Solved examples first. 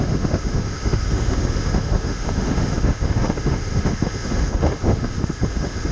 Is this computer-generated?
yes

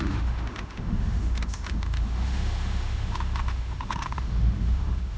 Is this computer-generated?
yes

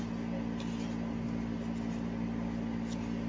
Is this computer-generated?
no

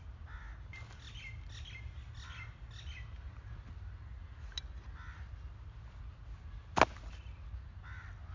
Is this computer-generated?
no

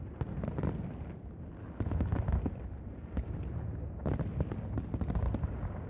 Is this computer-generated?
no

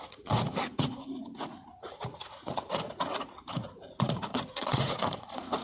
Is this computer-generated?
yes